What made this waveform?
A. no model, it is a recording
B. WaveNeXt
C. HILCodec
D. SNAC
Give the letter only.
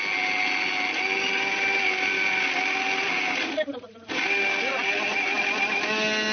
A